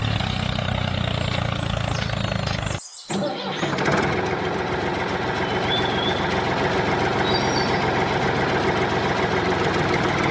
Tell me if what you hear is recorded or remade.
recorded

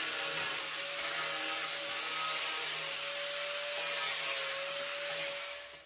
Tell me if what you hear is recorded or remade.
recorded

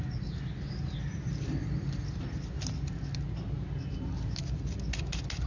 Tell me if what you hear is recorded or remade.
recorded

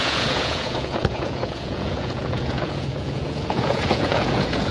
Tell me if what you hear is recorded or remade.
remade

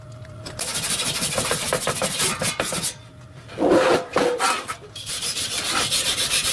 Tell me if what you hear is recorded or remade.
recorded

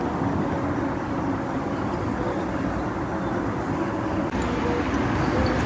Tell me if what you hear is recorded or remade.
recorded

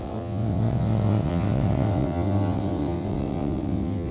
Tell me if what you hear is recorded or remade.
remade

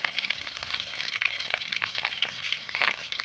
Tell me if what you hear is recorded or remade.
remade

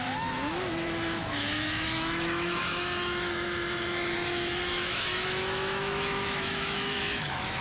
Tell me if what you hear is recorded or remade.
remade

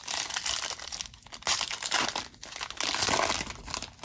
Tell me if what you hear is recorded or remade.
recorded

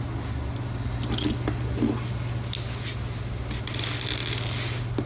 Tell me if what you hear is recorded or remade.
recorded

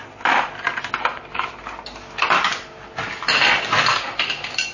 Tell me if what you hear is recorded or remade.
recorded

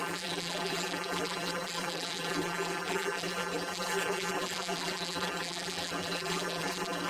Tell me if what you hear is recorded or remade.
remade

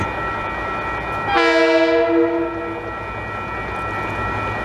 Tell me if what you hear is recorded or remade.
recorded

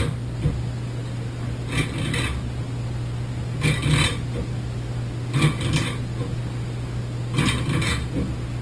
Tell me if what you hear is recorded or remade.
recorded